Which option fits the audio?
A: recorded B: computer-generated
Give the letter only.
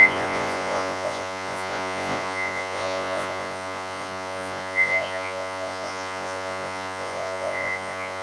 B